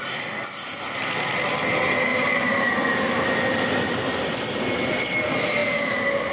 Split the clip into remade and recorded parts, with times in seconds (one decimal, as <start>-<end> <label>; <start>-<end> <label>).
0.0-2.1 recorded; 2.1-2.7 remade; 2.7-6.3 recorded